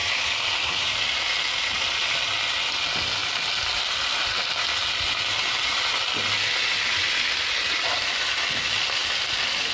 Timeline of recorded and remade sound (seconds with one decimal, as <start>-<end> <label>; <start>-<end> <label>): 0.0-1.3 remade; 1.3-9.0 recorded; 9.0-9.7 remade